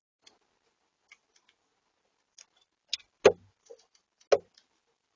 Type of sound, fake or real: real